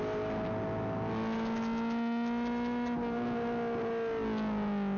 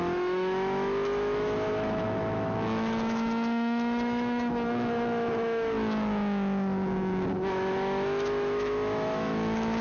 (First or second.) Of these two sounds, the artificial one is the second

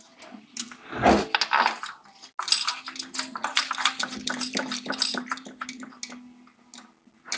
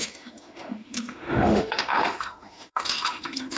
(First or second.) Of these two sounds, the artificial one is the second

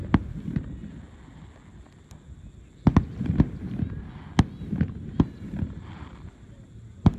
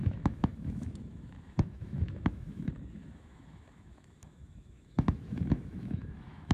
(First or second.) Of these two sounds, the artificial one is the second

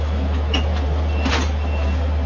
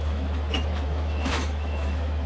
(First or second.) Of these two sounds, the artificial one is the second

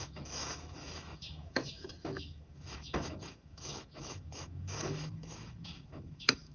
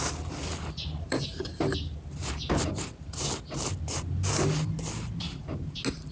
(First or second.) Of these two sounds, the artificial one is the first